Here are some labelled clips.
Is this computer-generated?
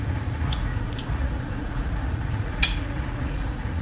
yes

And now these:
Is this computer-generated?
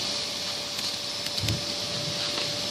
no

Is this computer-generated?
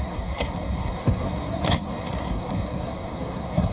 yes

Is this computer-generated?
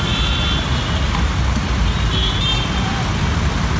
no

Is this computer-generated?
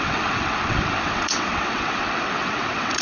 yes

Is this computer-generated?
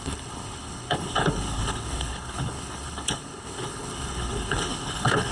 yes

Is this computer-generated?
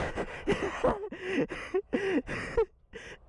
no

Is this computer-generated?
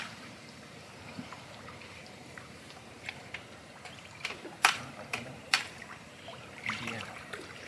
yes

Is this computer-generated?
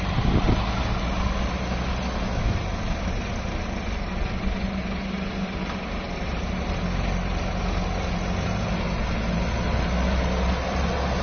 no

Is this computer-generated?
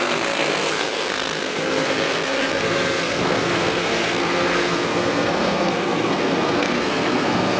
yes